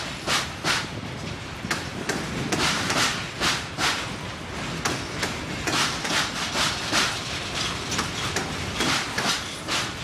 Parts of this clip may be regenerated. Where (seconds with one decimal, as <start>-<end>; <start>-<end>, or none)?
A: 0.0-1.9; 2.4-3.1; 7.1-10.0